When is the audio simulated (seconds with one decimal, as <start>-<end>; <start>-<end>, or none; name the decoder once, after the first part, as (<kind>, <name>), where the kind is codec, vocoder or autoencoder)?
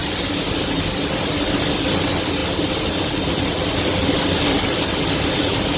none